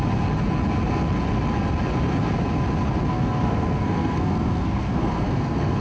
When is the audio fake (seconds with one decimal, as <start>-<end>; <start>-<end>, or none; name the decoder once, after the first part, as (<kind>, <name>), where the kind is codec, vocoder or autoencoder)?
3.1-5.8 (codec, SNAC)